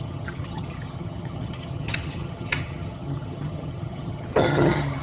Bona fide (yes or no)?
no